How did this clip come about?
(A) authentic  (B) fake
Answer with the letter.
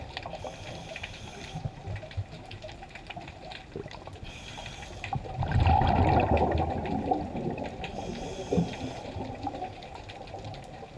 A